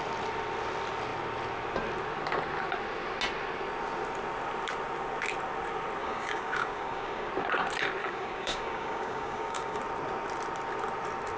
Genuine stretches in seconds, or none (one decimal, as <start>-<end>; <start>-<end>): 0.0-6.0; 7.3-8.0; 9.8-11.4